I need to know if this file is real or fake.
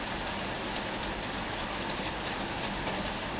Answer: real